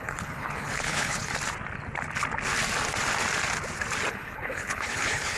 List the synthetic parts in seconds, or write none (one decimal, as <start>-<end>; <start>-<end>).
0.0-1.3; 4.1-5.4